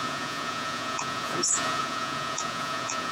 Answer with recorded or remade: remade